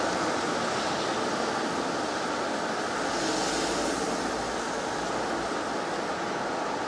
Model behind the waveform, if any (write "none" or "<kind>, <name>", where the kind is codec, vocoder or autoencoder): none